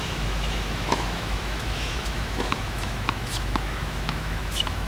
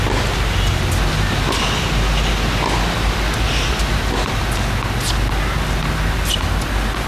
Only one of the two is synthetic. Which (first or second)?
first